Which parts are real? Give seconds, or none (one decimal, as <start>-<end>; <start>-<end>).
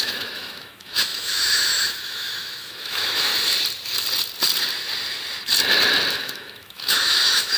3.3-6.1